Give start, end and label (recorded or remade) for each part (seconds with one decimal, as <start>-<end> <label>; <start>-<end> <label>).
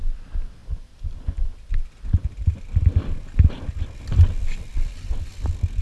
0.0-4.7 recorded; 4.7-5.3 remade; 5.3-5.8 recorded